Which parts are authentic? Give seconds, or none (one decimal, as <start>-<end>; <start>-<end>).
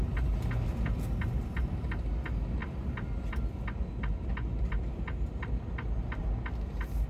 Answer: 0.0-7.1